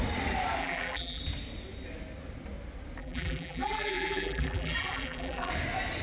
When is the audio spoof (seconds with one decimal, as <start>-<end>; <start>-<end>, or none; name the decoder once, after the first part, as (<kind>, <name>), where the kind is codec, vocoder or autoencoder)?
0.6-1.2 (vocoder, BigVGAN v2); 3.0-5.5